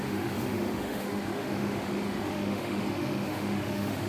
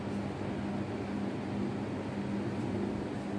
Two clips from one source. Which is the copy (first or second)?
first